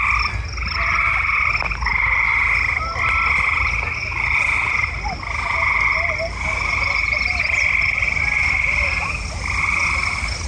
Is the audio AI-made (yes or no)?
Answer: no